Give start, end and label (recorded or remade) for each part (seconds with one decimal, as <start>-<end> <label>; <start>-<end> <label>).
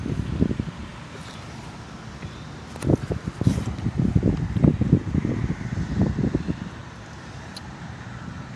0.0-0.9 recorded; 0.9-6.0 remade; 6.0-6.8 recorded; 6.8-8.6 remade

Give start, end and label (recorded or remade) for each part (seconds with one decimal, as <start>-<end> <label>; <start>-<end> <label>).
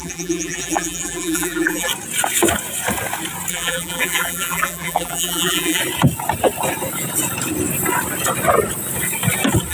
0.0-1.9 remade; 1.9-3.5 recorded; 3.5-5.8 remade; 5.8-9.7 recorded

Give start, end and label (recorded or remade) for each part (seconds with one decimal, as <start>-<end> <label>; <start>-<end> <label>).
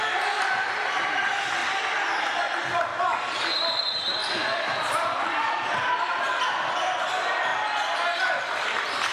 0.0-1.6 remade; 1.6-2.2 recorded; 2.2-2.9 remade; 2.9-3.5 recorded; 3.5-7.5 remade; 7.5-8.4 recorded; 8.4-9.1 remade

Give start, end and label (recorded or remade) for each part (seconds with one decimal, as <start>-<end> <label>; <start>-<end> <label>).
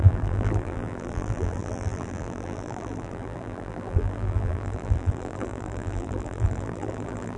0.0-7.4 remade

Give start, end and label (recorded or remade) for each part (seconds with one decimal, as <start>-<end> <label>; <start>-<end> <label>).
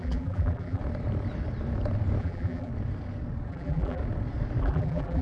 0.0-0.8 remade; 0.8-2.2 recorded; 2.2-2.7 remade; 2.7-3.5 recorded; 3.5-4.0 remade; 4.0-4.6 recorded; 4.6-5.2 remade